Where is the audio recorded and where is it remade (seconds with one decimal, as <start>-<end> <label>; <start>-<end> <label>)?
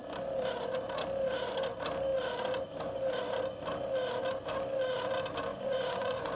0.0-5.5 recorded; 5.5-6.3 remade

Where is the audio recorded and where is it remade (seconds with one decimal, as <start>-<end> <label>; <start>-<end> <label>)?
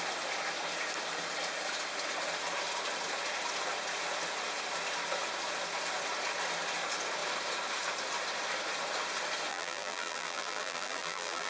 0.0-9.5 recorded; 9.5-11.5 remade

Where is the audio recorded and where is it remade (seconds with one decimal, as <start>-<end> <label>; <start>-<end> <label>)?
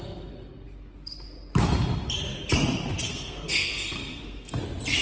0.0-3.1 recorded; 3.1-4.6 remade; 4.6-5.0 recorded